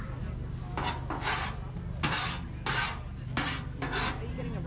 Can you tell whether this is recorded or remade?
recorded